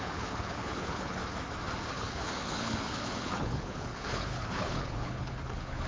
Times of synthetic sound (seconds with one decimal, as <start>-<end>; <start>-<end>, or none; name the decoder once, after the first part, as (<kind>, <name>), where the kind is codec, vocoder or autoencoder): 0.0-1.2 (codec, HILCodec); 1.9-5.9